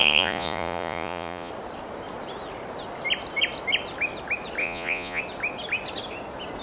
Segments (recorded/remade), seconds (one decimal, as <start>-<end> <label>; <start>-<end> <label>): 0.0-1.5 remade; 1.5-4.6 recorded; 4.6-5.2 remade; 5.2-6.6 recorded

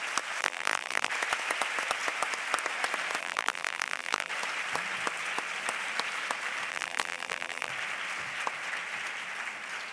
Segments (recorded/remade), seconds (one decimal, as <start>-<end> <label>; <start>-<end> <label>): 0.0-0.4 recorded; 0.4-1.1 remade; 1.1-3.2 recorded; 3.2-4.3 remade; 4.3-6.7 recorded; 6.7-7.7 remade; 7.7-9.9 recorded

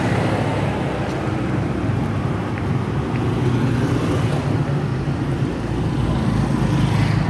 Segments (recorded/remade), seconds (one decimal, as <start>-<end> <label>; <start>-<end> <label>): 0.0-0.5 recorded; 0.5-3.5 remade; 3.5-4.9 recorded; 4.9-5.9 remade; 5.9-7.3 recorded

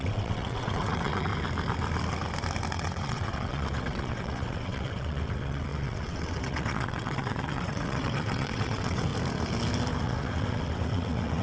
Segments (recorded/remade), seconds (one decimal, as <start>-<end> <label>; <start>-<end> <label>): 0.0-1.3 remade; 1.3-2.7 recorded; 2.7-9.1 remade; 9.1-10.0 recorded; 10.0-11.4 remade

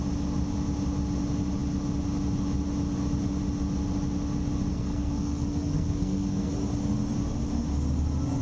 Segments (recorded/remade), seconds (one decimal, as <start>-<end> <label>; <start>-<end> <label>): 0.0-4.7 recorded; 4.7-6.5 remade; 6.5-8.4 recorded